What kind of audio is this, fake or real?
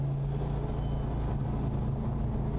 real